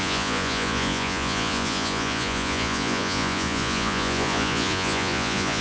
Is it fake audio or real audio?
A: fake